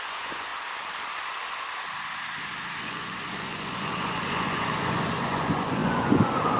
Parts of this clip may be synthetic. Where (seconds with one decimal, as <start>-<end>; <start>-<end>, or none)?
0.0-0.5; 2.8-6.6